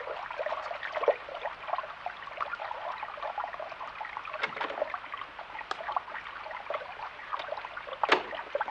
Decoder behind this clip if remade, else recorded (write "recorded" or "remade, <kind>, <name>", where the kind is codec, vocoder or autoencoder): recorded